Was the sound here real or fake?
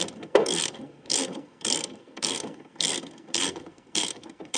fake